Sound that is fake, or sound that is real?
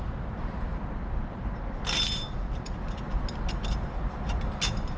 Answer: real